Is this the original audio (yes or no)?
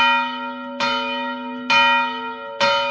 yes